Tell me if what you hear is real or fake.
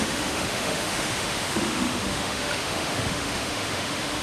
fake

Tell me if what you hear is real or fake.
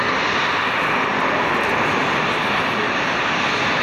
real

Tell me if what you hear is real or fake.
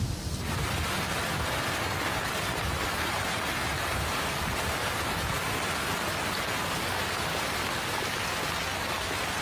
real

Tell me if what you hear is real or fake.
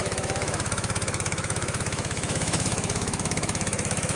fake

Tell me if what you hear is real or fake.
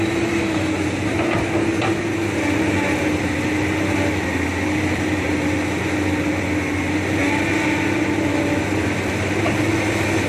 real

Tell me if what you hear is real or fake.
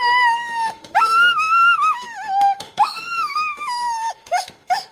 fake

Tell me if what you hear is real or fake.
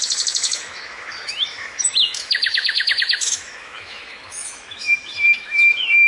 fake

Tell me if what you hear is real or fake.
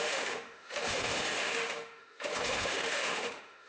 fake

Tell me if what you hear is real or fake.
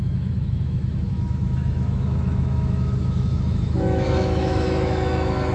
fake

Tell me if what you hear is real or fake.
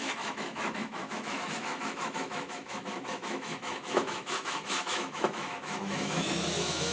fake